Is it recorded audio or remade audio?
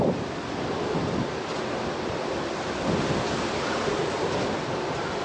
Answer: recorded